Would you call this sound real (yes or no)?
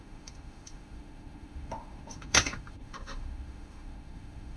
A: no